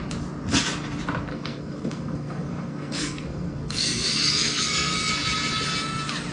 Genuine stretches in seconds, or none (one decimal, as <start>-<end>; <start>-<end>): 0.0-1.3; 5.1-6.3